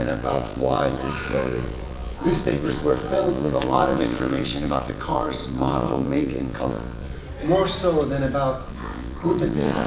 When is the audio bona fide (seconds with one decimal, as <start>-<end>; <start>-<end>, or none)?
7.2-8.6